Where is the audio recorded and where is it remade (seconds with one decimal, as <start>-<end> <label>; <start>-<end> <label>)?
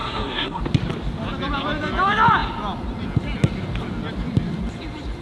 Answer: 0.0-0.6 remade; 0.6-5.2 recorded